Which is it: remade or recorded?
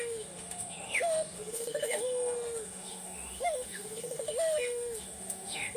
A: remade